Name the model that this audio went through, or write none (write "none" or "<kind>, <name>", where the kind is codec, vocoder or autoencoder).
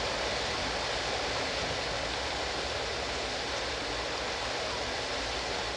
none